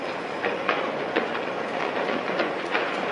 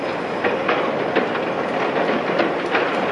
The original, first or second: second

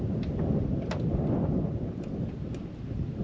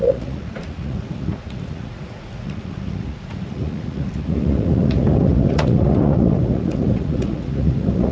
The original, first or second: first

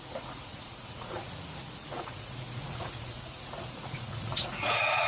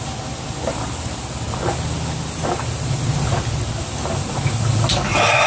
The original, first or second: second